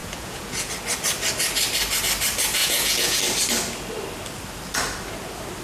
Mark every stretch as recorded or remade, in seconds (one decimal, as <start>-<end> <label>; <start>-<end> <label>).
0.0-0.7 remade; 0.7-2.6 recorded; 2.6-3.2 remade; 3.2-5.6 recorded